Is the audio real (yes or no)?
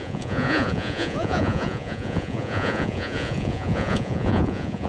no